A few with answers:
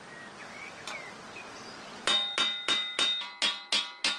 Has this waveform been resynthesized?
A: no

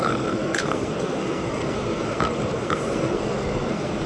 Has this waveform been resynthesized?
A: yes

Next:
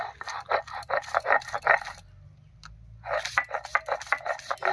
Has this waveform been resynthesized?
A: no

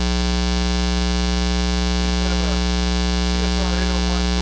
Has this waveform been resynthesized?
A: no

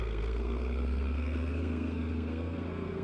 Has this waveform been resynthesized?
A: yes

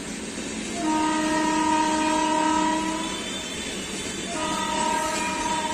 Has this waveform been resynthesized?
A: no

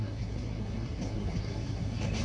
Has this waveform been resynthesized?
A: yes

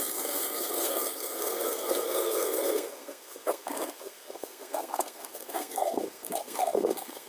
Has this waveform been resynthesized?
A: yes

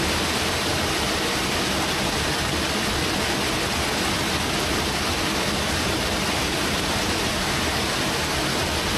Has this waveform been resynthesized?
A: no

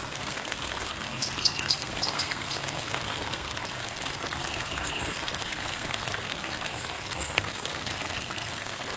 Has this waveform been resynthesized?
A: yes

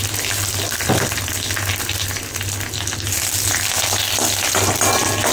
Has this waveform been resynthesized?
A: no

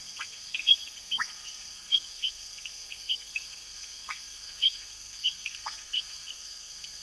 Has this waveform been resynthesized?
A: yes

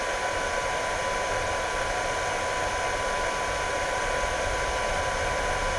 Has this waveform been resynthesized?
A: no